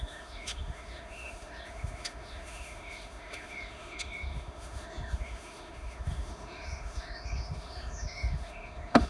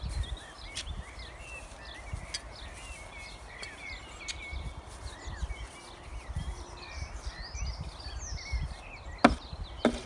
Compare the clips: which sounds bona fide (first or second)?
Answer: second